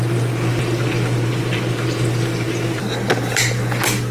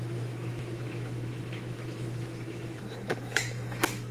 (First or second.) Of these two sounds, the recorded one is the first